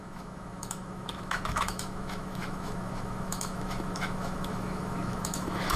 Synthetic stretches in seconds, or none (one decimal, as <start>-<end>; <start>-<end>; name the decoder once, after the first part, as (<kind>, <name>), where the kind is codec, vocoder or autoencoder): 0.0-5.8 (autoencoder, DAC-VAE)